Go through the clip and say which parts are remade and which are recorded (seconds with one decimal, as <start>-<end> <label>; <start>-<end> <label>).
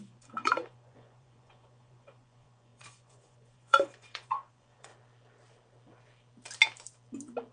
0.0-4.9 remade; 4.9-7.5 recorded